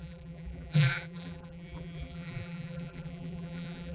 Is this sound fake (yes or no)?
yes